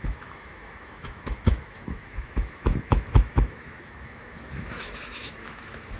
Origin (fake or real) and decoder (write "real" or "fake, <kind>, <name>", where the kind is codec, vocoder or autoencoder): fake, autoencoder, DAC-VAE